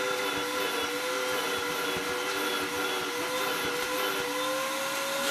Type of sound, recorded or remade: recorded